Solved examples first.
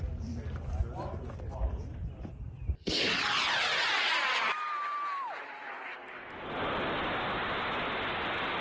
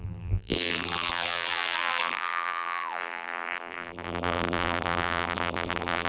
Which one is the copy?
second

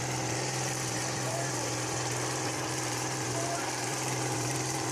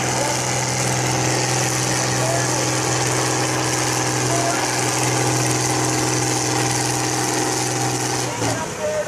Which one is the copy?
first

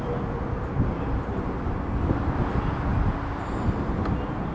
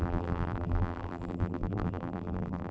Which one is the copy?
second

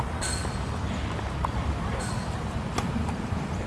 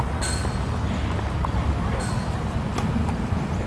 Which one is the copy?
first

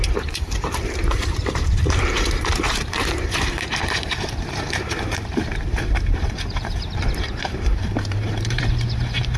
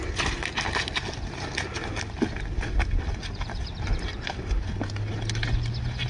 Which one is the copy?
first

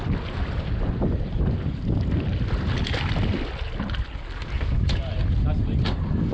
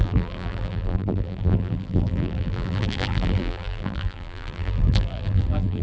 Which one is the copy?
second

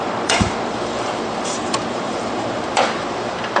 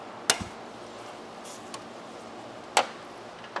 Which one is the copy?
first